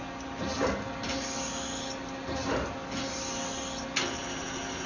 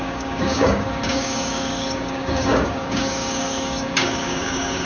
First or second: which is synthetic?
second